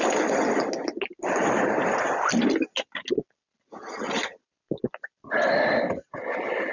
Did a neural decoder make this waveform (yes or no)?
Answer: no